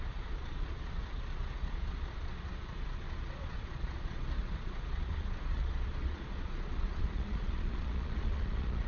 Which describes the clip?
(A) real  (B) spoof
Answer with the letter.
B